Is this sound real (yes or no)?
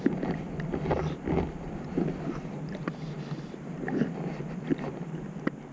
yes